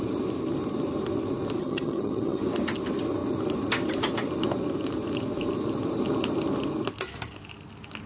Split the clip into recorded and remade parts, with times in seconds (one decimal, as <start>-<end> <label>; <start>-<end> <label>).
0.0-1.6 recorded; 1.6-2.4 remade; 2.4-8.1 recorded